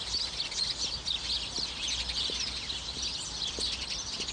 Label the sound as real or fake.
real